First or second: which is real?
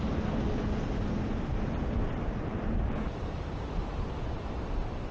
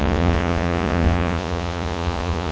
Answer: first